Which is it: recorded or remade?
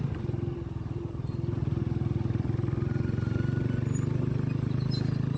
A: recorded